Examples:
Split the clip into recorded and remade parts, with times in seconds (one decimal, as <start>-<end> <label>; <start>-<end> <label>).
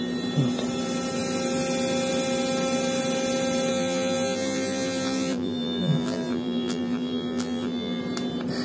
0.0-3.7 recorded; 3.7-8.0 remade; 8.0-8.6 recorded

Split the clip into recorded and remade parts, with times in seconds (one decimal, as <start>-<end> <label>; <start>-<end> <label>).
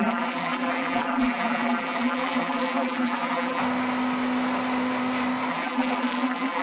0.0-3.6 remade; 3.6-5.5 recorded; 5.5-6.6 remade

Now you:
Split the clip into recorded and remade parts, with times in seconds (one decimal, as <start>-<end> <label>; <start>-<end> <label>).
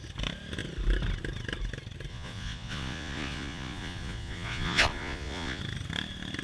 0.0-2.1 recorded; 2.1-5.6 remade; 5.6-6.4 recorded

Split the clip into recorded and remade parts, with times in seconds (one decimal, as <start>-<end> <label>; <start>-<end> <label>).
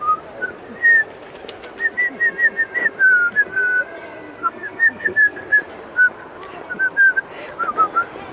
0.0-4.4 recorded; 4.4-5.4 remade; 5.4-8.3 recorded